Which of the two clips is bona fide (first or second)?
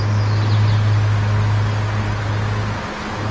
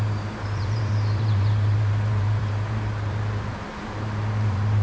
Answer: first